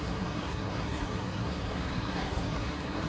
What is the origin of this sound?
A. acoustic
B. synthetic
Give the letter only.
B